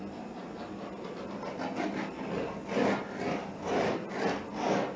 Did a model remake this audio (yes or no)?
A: no